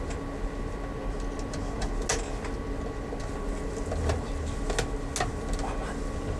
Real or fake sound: real